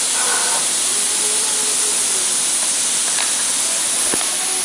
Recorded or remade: recorded